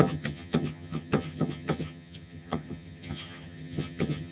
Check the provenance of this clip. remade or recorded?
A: remade